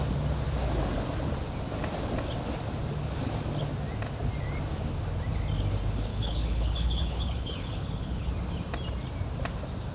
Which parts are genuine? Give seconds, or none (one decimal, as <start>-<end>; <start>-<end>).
0.0-6.1; 8.3-9.9